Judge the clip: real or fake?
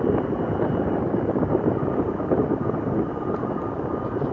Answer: real